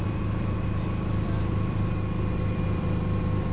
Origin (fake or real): fake